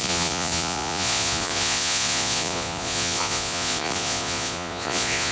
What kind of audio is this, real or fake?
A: fake